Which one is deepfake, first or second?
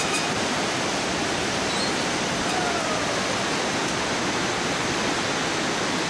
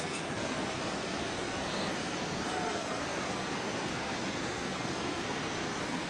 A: second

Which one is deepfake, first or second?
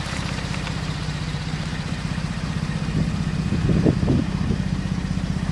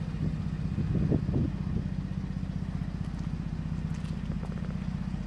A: first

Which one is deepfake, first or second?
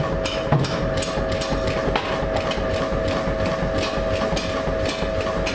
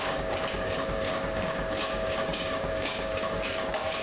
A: second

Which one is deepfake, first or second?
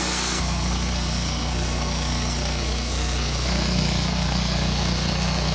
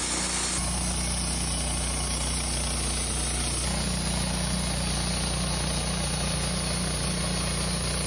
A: first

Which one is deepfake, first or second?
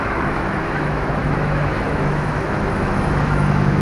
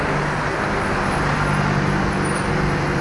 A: first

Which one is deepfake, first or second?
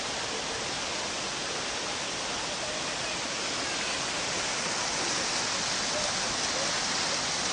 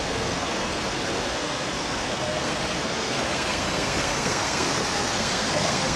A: second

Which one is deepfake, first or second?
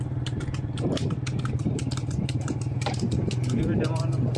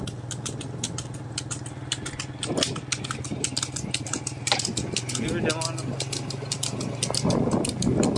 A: first